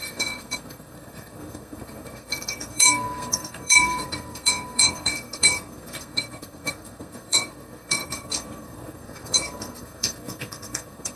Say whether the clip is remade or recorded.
remade